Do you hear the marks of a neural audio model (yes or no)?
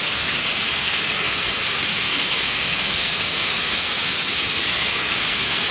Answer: yes